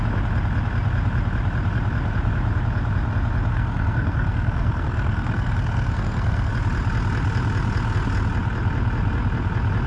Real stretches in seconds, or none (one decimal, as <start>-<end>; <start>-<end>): 0.0-3.5; 6.5-9.9